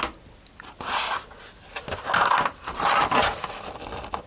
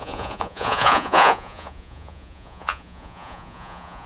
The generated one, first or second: second